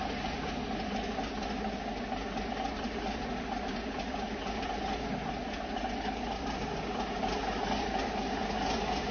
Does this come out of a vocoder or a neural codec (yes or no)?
no